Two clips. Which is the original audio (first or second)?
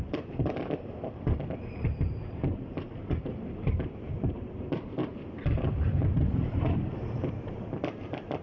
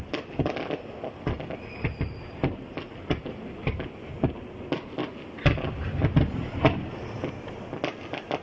second